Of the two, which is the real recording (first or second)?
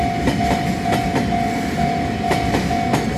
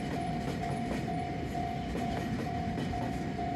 first